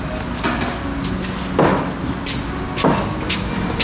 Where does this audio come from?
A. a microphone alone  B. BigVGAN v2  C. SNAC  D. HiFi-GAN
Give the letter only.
A